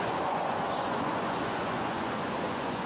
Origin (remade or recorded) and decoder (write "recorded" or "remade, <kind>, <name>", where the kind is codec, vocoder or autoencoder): remade, vocoder, Vocos